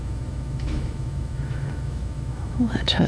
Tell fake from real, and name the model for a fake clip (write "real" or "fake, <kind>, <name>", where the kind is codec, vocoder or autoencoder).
fake, autoencoder, DAC-VAE